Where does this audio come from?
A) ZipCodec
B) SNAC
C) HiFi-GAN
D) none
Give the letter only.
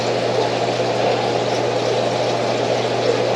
D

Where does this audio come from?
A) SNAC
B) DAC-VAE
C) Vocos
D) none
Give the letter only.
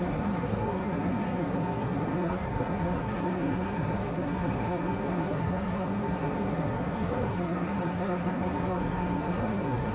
A